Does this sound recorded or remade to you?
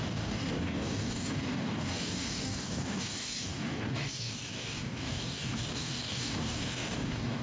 remade